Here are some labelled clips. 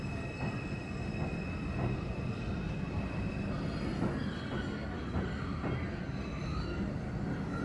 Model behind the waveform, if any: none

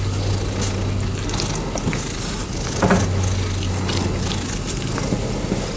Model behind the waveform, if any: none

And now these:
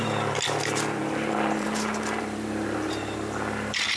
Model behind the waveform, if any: vocoder, BigVGAN v2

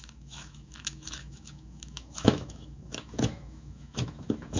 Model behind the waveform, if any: autoencoder, DAC-VAE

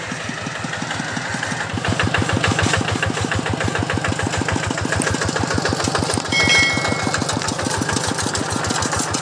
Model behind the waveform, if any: none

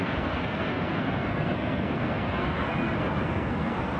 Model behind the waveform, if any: codec, SNAC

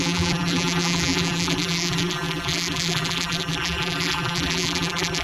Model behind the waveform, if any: vocoder, BigVGAN v2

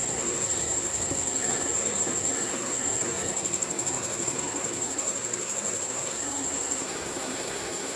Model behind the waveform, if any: codec, SNAC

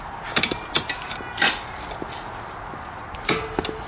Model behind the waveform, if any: none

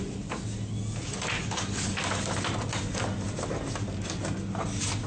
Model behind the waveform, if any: none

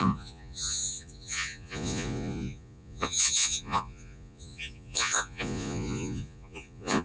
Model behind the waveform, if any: vocoder, Vocos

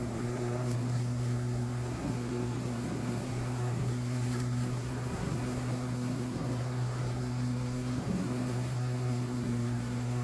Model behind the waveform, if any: codec, SNAC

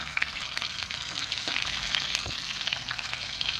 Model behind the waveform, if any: codec, SNAC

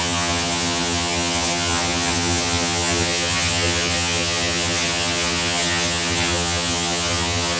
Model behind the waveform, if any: vocoder, HiFi-GAN